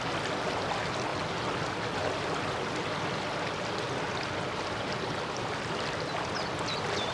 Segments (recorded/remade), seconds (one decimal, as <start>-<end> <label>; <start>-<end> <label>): 0.0-7.1 recorded